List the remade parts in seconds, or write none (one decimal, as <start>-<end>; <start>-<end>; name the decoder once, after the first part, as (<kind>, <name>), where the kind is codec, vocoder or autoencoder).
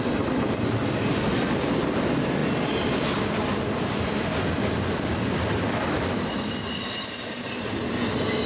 none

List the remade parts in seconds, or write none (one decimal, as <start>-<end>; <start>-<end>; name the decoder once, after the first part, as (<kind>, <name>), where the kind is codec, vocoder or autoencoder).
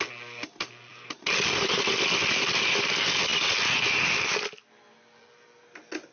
0.9-1.9 (vocoder, BigVGAN v2)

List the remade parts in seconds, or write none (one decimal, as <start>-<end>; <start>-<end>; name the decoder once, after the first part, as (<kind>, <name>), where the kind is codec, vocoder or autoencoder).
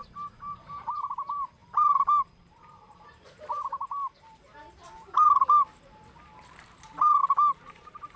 0.8-7.2 (vocoder, BigVGAN v2); 7.7-8.2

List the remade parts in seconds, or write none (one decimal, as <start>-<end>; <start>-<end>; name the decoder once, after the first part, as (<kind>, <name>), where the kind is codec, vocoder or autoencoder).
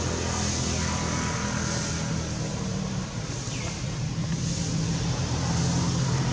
2.5-3.5 (vocoder, BigVGAN v2); 4.3-5.6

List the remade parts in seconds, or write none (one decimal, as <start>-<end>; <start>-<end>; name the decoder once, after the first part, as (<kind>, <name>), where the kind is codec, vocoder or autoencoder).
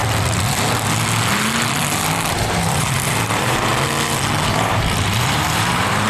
2.3-3.7 (vocoder, BigVGAN v2); 4.5-6.1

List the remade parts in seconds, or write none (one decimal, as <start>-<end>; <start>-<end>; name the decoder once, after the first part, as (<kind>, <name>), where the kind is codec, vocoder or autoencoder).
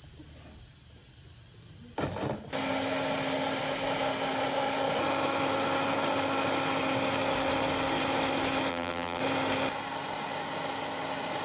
8.7-9.2 (vocoder, BigVGAN v2)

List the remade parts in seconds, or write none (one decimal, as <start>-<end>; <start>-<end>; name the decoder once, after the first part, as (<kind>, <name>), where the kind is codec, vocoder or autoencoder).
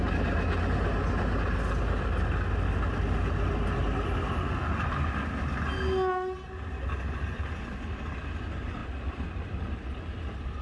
none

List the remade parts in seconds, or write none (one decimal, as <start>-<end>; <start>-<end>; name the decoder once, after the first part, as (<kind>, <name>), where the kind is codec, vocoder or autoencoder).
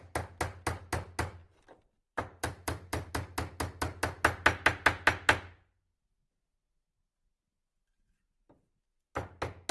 1.4-3.1 (vocoder, BigVGAN v2)